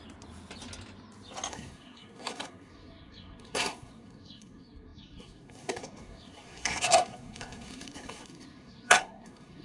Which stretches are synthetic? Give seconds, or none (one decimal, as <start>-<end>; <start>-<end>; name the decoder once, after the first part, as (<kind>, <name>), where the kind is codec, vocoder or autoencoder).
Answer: 1.5-9.6 (codec, SNAC)